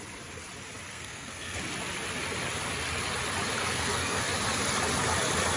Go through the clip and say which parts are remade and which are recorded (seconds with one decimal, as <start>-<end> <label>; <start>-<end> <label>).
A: 0.0-0.9 recorded; 0.9-1.6 remade; 1.6-3.6 recorded; 3.6-4.2 remade; 4.2-5.6 recorded